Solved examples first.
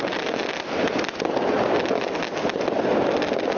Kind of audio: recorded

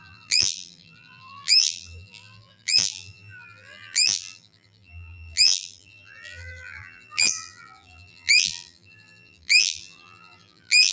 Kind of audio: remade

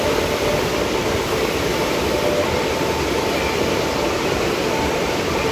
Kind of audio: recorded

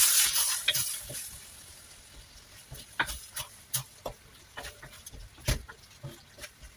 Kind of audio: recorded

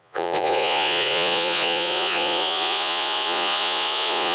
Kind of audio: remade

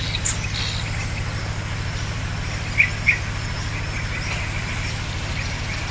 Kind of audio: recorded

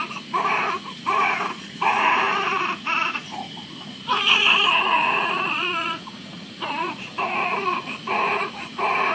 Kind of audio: remade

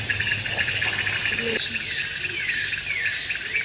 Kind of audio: recorded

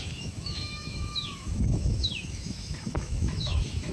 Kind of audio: remade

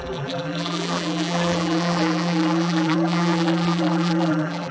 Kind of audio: remade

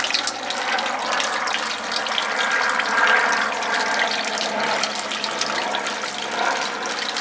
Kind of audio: recorded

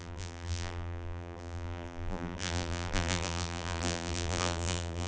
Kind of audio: remade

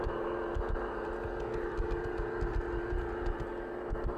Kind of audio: recorded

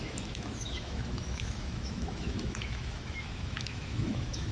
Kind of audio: remade